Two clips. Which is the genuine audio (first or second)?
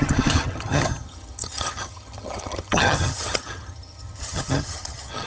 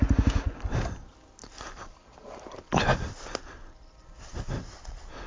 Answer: second